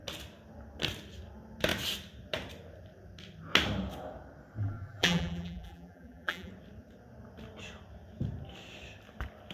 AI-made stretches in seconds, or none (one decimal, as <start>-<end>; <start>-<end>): 4.6-6.5